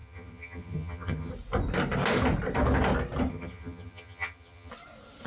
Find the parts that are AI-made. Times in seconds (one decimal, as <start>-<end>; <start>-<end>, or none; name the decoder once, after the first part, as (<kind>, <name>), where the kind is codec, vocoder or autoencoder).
0.0-1.3 (vocoder, HiFi-GAN); 3.3-4.7